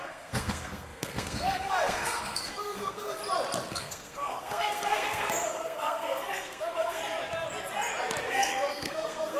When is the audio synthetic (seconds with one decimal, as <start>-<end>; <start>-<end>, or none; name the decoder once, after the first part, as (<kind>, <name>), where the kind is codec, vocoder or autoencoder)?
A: 0.0-3.2 (codec, SNAC); 3.7-7.0; 8.3-9.4

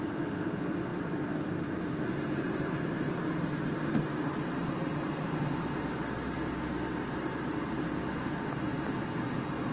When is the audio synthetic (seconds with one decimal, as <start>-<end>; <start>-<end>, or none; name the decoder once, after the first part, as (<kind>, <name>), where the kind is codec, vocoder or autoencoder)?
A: none

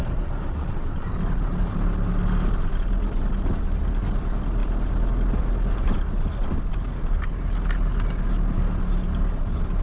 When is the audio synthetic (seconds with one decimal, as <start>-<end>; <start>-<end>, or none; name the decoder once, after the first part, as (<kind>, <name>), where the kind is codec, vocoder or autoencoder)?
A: none

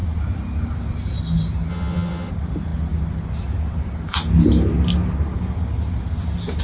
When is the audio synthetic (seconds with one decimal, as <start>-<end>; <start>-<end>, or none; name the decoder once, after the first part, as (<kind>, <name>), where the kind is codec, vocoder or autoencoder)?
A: 1.7-2.3 (vocoder, HiFi-GAN)

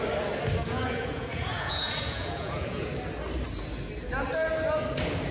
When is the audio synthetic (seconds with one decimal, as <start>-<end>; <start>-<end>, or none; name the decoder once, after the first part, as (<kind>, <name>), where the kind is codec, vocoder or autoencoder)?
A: 0.6-2.9 (vocoder, Vocos)

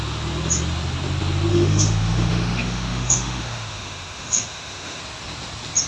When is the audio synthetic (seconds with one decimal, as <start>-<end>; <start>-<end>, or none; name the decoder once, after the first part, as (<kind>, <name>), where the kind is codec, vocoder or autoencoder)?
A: 1.5-5.0 (autoencoder, DAC-VAE)